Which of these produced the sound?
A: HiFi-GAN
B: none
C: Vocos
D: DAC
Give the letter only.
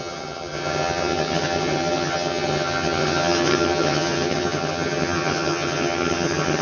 A